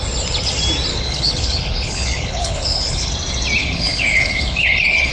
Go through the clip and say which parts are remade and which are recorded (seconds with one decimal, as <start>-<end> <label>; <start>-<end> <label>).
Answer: 0.0-0.9 recorded; 0.9-3.1 remade; 3.1-3.6 recorded; 3.6-5.1 remade